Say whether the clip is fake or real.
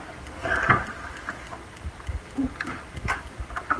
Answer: real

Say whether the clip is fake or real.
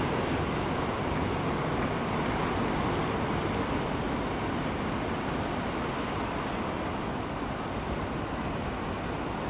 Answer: real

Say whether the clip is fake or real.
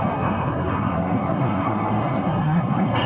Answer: fake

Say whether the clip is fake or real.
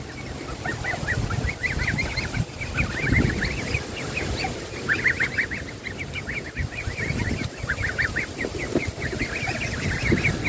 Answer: real